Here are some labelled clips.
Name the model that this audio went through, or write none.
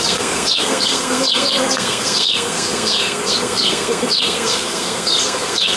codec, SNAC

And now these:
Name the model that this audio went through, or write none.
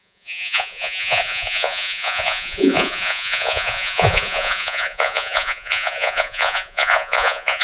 vocoder, Vocos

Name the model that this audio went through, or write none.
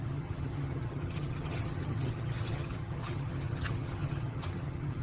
vocoder, HiFi-GAN